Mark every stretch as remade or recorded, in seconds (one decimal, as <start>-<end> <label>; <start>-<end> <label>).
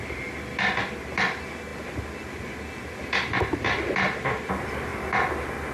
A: 0.0-5.7 recorded